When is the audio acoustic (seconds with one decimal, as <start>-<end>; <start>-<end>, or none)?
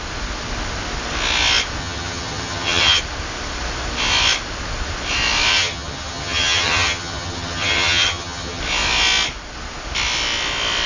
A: 0.0-1.8; 3.0-5.5; 8.6-10.9